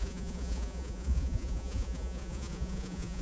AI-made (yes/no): yes